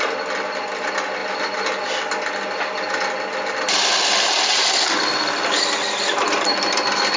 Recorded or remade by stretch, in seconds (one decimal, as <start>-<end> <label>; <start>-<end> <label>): 0.0-7.2 recorded